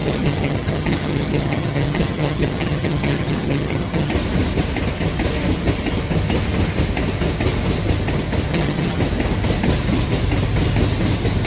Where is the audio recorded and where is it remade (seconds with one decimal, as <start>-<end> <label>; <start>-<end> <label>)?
0.0-4.1 remade; 4.1-8.5 recorded; 8.5-9.0 remade; 9.0-11.5 recorded

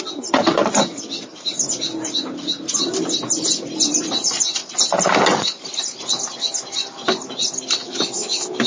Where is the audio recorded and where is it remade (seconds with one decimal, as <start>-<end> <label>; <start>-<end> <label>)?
0.0-7.8 recorded; 7.8-8.7 remade

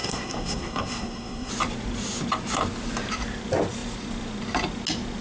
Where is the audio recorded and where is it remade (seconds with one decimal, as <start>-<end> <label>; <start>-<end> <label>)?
0.0-1.5 remade; 1.5-5.2 recorded

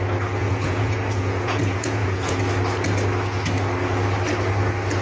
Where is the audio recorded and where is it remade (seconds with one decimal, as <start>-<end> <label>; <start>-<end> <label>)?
0.0-0.4 recorded; 0.4-2.4 remade; 2.4-5.0 recorded

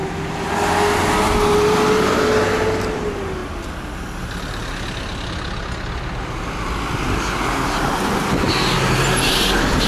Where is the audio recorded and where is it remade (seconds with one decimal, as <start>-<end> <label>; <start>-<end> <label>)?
0.0-0.5 remade; 0.5-9.9 recorded

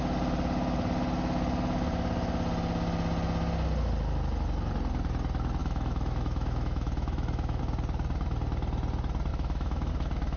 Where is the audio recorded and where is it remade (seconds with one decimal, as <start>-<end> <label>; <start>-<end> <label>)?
0.0-5.6 recorded; 5.6-7.6 remade; 7.6-9.3 recorded; 9.3-9.9 remade; 9.9-10.4 recorded

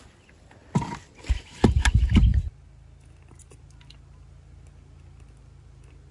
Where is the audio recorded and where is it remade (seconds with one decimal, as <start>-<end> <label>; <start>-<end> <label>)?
0.0-6.1 recorded